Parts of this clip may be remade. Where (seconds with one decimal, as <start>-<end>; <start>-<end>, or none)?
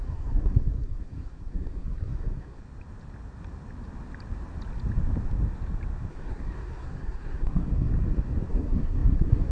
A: 0.0-2.6; 6.1-7.9; 8.5-9.5